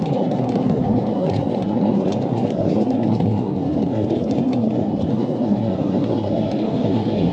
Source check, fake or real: fake